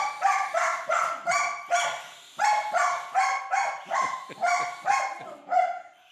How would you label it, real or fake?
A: real